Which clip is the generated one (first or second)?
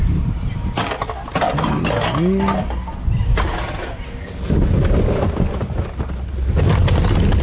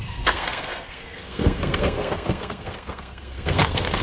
second